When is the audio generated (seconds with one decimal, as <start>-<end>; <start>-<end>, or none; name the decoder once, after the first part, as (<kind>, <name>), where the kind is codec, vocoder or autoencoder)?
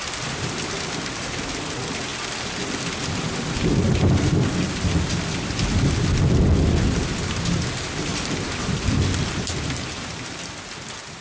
none